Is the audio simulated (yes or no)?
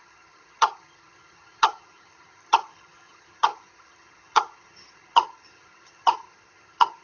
yes